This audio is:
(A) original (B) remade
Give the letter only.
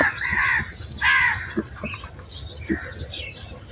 A